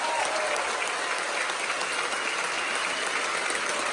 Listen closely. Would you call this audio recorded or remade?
recorded